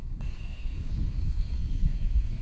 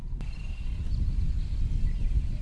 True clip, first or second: second